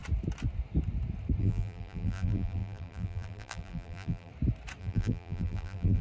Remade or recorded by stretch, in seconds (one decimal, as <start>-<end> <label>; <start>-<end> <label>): 0.0-1.4 recorded; 1.4-4.3 remade; 4.3-4.8 recorded; 4.8-6.0 remade